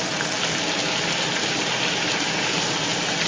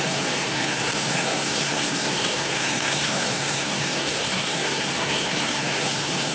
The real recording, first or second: first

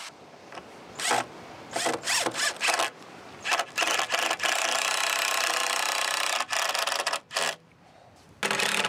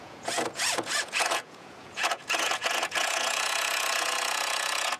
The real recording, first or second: first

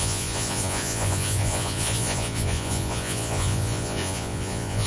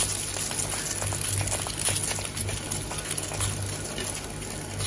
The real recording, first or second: second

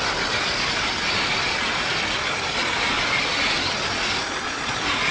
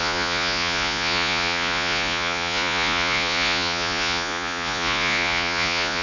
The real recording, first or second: first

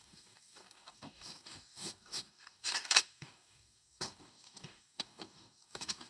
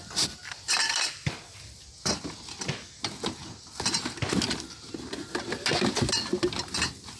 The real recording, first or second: second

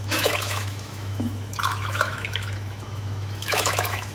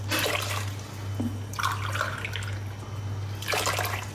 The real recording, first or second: second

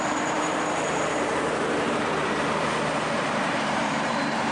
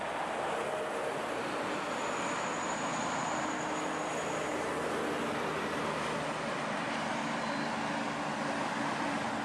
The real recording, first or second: second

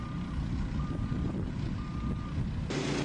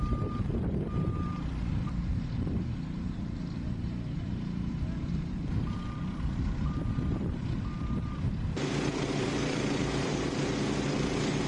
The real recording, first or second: first